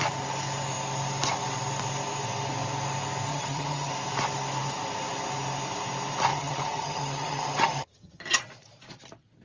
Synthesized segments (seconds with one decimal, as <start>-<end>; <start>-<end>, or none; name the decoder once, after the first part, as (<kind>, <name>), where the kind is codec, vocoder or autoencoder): 3.3-3.9 (vocoder, HiFi-GAN); 6.3-8.4